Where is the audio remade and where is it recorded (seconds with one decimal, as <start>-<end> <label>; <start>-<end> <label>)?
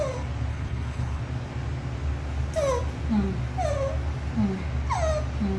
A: 0.0-0.5 recorded; 0.5-1.2 remade; 1.2-5.6 recorded